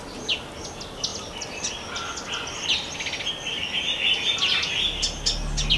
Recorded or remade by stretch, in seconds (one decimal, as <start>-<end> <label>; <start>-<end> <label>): 0.0-5.8 recorded